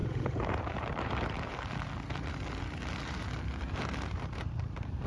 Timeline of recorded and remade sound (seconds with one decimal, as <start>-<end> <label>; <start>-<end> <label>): 0.0-1.6 remade; 1.6-3.0 recorded; 3.0-5.1 remade